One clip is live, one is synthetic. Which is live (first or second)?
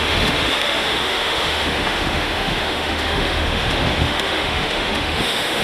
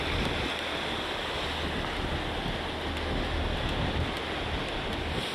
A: second